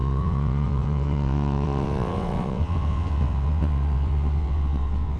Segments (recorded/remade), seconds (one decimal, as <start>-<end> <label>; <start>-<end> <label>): 0.0-5.2 remade